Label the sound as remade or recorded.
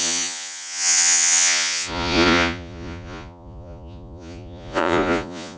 remade